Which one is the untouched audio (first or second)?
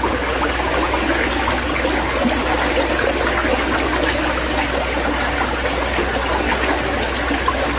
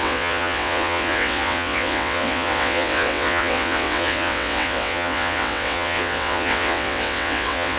first